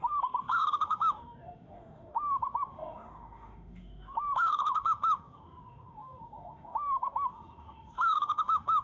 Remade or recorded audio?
remade